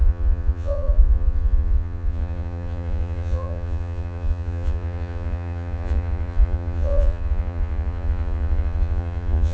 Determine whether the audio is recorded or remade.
remade